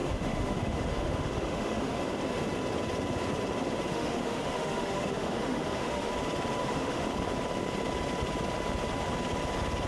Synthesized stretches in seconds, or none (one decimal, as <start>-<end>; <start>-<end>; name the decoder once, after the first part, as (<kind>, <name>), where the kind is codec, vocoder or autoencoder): 0.0-2.0 (autoencoder, DAC-VAE); 3.9-6.1; 6.6-7.1